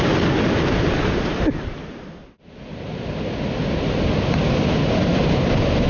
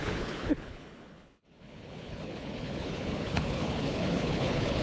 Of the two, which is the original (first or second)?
first